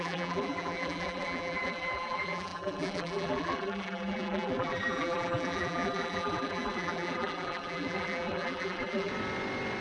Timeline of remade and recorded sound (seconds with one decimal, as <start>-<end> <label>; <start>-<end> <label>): 0.0-9.1 remade; 9.1-9.8 recorded